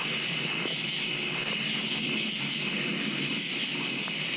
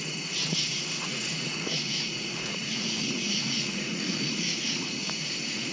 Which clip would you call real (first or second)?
first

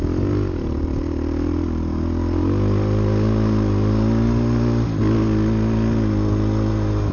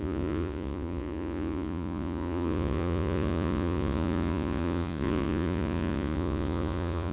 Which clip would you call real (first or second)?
first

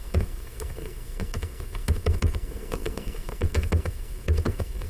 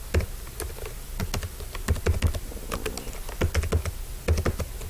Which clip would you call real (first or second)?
second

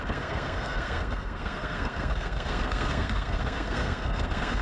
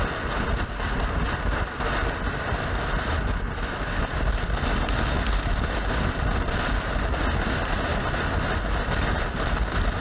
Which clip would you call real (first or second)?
second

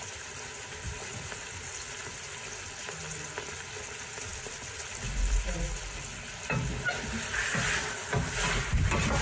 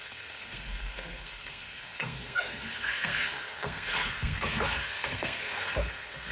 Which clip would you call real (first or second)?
first